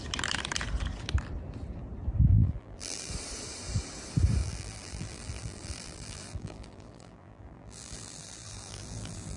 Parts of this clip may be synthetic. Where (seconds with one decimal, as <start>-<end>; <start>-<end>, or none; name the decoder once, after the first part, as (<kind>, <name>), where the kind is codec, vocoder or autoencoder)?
2.3-3.1 (vocoder, BigVGAN v2); 4.4-9.4